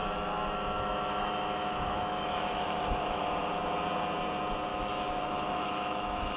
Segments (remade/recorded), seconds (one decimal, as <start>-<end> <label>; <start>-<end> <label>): 0.0-3.2 remade; 3.2-4.7 recorded; 4.7-6.4 remade